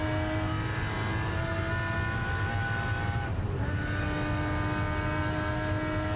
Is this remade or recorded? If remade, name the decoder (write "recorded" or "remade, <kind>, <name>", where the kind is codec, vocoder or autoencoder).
recorded